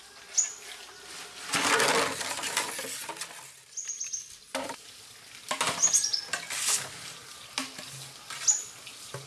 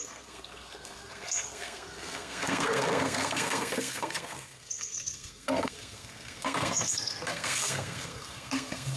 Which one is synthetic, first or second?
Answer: second